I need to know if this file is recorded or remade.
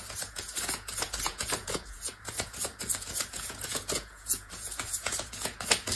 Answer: remade